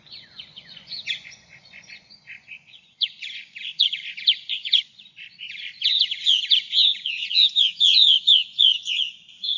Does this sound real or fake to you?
fake